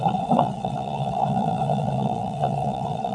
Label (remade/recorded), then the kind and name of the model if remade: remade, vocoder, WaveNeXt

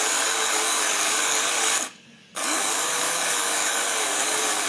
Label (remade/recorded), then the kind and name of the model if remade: remade, codec, DAC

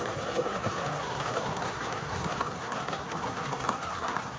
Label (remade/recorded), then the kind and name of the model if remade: remade, codec, SNAC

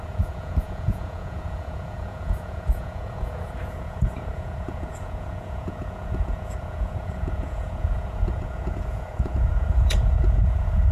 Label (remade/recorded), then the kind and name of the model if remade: remade, vocoder, Vocos